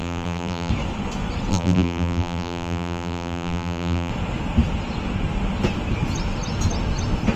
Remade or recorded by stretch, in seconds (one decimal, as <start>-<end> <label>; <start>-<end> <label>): 0.0-0.7 remade; 0.7-1.5 recorded; 1.5-4.1 remade; 4.1-7.4 recorded